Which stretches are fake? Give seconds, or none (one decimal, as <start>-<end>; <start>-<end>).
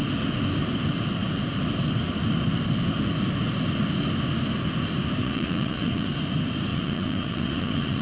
5.2-6.1; 6.7-8.0